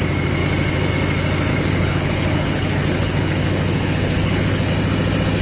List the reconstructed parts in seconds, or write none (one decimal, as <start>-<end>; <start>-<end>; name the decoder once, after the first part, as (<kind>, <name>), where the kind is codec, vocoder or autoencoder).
1.5-4.7 (codec, HILCodec)